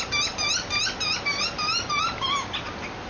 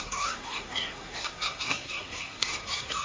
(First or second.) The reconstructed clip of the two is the second